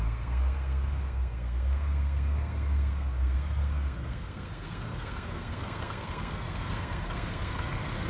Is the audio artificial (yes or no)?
yes